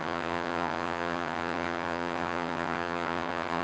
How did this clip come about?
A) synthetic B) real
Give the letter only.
A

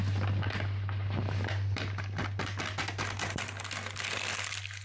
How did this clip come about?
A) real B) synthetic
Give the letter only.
A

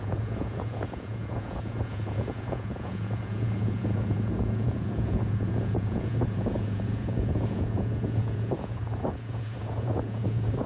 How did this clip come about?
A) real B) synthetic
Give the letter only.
B